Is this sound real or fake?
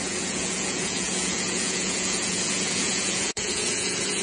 fake